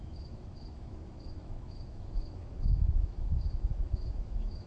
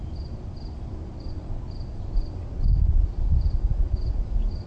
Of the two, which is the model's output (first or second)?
first